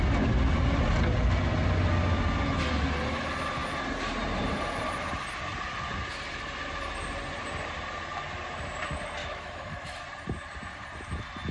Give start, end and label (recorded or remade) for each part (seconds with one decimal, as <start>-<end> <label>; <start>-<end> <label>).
0.0-9.2 recorded; 9.2-10.0 remade; 10.0-11.5 recorded